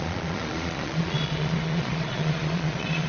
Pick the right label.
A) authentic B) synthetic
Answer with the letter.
B